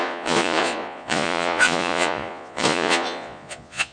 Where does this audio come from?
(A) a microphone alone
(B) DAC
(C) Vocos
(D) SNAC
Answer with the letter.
C